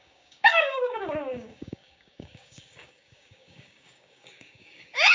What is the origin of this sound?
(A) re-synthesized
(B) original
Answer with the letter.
A